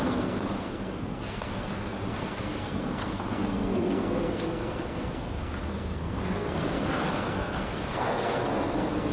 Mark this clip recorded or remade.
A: remade